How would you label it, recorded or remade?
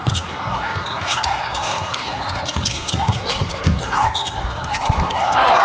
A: remade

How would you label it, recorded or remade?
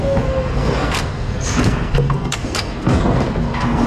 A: remade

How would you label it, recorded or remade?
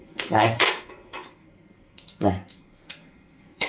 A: remade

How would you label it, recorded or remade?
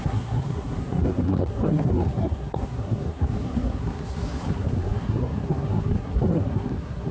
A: remade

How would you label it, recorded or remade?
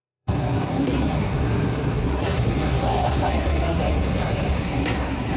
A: remade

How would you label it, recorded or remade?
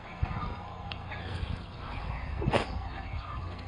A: remade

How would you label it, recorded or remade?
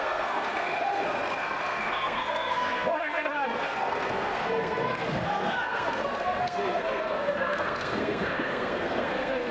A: remade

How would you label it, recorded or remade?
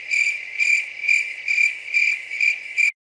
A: recorded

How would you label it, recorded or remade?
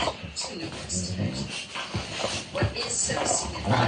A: recorded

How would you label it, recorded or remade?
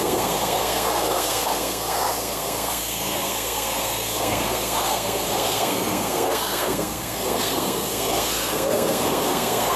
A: remade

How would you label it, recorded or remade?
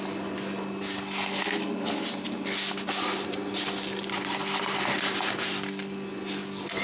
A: recorded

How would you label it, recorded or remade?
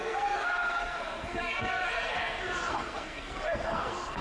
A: remade